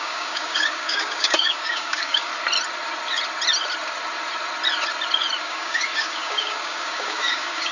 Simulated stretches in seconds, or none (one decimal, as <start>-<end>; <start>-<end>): 0.0-2.3; 5.4-7.7